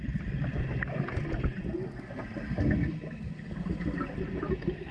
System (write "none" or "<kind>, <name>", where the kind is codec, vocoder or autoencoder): none